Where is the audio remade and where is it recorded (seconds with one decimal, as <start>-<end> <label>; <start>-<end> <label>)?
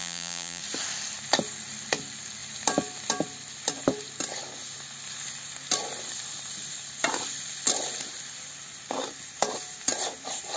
0.0-0.6 remade; 0.6-10.6 recorded